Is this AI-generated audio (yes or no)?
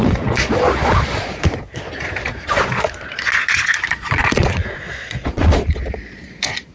yes